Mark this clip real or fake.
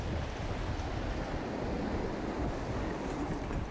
real